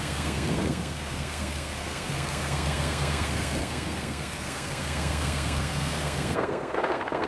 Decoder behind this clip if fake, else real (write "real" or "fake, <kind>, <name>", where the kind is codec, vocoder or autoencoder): fake, codec, SNAC